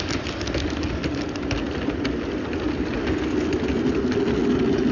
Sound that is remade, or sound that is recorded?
recorded